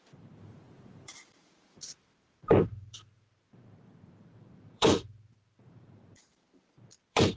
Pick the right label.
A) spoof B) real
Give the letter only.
A